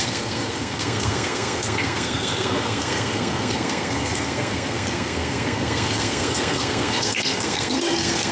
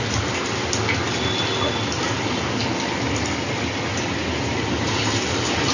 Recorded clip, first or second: second